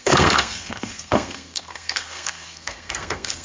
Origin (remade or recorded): remade